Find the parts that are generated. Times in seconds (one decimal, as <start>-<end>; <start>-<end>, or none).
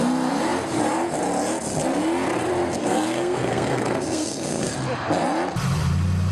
2.8-4.7